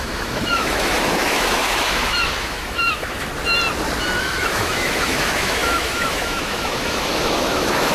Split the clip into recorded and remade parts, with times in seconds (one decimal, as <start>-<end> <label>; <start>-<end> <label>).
0.0-3.3 remade; 3.3-4.2 recorded; 4.2-7.9 remade